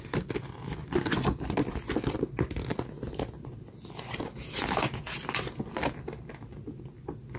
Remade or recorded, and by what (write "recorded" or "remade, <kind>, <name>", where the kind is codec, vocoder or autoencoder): recorded